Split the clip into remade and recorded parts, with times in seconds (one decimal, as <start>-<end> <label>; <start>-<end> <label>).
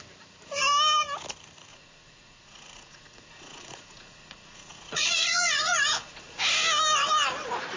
0.0-1.7 recorded; 1.7-6.4 remade; 6.4-7.8 recorded